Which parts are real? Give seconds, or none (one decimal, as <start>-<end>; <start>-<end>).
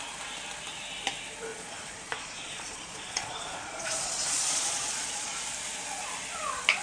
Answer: 0.0-1.5; 5.4-6.8